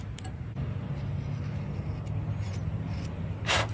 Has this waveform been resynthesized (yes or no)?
no